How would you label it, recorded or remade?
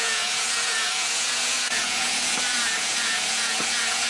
remade